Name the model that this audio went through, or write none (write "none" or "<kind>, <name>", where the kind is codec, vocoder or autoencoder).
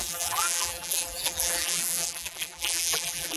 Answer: vocoder, BigVGAN v2